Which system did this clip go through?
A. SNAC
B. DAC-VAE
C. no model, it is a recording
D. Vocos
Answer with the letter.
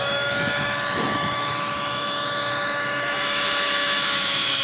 B